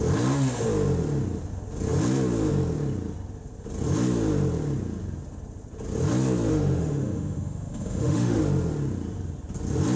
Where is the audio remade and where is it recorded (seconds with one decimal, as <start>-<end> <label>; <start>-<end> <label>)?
0.0-6.5 recorded; 6.5-8.4 remade; 8.4-10.0 recorded

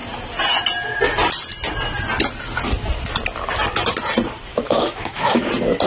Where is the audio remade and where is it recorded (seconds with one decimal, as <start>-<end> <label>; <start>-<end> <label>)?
0.0-4.5 recorded; 4.5-5.5 remade; 5.5-5.9 recorded

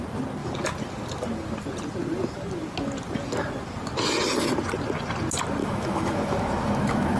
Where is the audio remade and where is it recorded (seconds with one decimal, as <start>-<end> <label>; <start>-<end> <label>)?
0.0-5.6 recorded; 5.6-7.2 remade

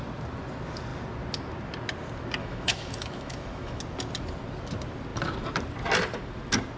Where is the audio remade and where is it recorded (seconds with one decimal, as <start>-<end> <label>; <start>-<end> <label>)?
0.0-2.4 recorded; 2.4-3.8 remade; 3.8-6.8 recorded